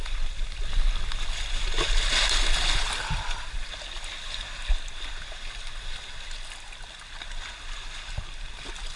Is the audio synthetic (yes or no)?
no